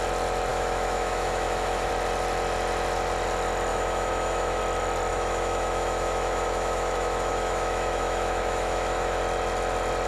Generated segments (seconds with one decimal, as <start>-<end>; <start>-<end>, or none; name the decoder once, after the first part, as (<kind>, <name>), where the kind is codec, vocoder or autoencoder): 0.5-1.9 (autoencoder, DAC-VAE); 3.7-4.6; 5.1-9.2